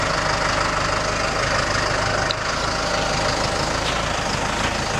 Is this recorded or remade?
recorded